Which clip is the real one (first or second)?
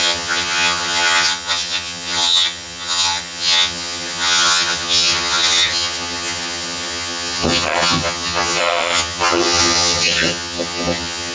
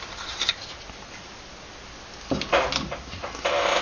second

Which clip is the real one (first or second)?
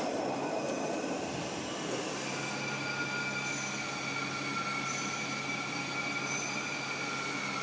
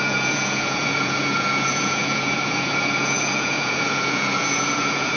first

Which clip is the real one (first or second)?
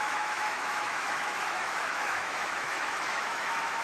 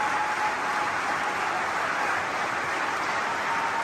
second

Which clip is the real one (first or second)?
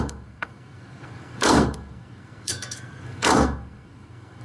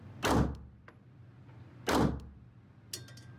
second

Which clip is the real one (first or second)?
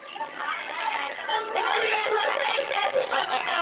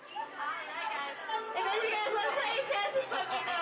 second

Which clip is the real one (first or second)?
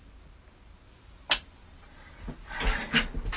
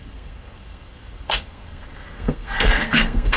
first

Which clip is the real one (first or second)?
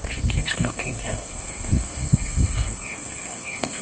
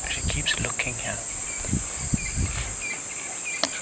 second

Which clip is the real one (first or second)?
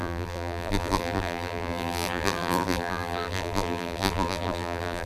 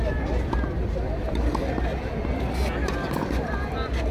second